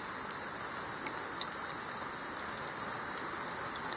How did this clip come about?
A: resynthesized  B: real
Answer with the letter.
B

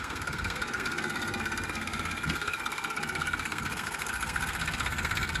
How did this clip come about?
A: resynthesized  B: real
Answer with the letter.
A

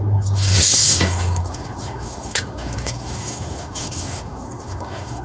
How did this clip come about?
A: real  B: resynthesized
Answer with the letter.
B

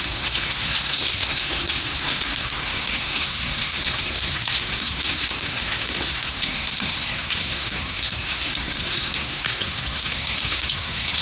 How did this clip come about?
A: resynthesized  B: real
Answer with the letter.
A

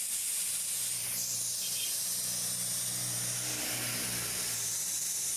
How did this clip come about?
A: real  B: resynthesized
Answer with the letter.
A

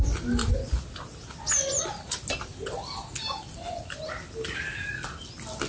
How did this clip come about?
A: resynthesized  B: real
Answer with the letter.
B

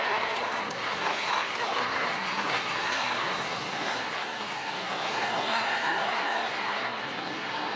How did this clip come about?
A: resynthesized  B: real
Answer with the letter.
A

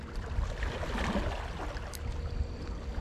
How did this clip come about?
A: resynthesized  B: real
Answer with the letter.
B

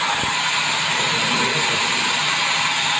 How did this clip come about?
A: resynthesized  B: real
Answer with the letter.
B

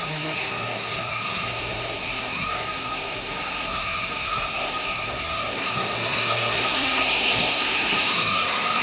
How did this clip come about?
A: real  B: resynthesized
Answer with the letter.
B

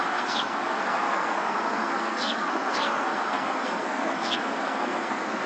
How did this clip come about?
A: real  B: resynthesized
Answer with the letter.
B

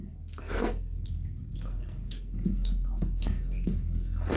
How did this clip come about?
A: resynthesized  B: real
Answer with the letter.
A